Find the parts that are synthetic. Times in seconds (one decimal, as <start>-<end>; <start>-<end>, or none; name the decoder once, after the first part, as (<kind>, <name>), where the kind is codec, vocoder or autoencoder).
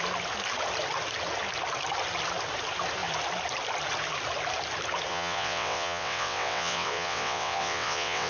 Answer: 5.1-8.3 (vocoder, WaveNeXt)